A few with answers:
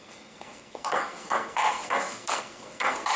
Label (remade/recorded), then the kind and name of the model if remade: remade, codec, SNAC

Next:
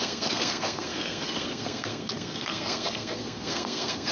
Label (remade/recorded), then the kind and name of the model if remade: remade, codec, SNAC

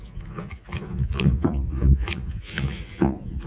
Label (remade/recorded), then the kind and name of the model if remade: remade, vocoder, Vocos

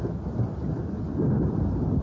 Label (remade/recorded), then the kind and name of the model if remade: recorded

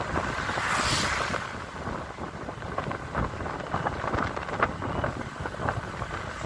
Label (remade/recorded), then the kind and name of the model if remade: recorded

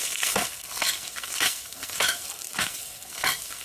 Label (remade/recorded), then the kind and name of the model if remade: remade, codec, SNAC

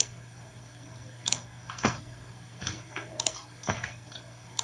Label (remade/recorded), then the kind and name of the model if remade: remade, codec, SNAC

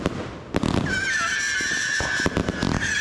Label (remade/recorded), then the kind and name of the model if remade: recorded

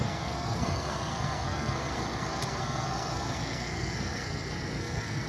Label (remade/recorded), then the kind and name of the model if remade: remade, codec, SNAC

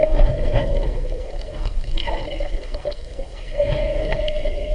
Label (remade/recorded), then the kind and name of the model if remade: remade, codec, SNAC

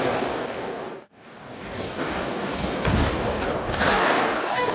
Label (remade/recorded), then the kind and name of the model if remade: remade, codec, DAC